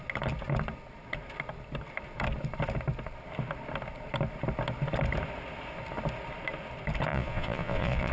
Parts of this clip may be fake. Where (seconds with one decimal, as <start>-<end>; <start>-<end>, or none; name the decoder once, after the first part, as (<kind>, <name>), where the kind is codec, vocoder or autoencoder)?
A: 7.1-8.1 (vocoder, Vocos)